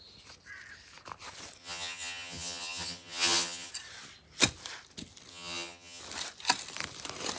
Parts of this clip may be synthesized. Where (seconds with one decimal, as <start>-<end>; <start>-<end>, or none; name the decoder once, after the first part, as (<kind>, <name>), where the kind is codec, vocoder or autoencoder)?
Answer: 1.6-3.7 (vocoder, HiFi-GAN); 5.3-6.0